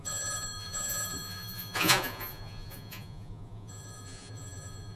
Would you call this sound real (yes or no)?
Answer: no